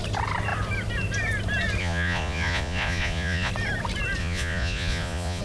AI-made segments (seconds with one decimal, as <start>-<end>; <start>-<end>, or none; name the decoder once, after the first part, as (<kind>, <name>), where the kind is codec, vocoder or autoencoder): 1.8-3.5 (vocoder, Vocos); 4.2-5.4